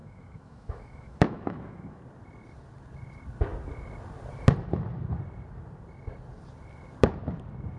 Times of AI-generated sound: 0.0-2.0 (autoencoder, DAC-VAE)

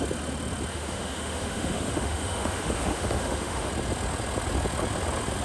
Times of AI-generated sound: 0.7-3.7 (autoencoder, DAC-VAE)

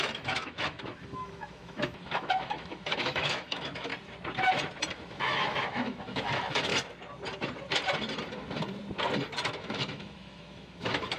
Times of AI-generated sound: 0.0-3.9 (autoencoder, DAC-VAE); 4.9-6.7; 9.6-11.2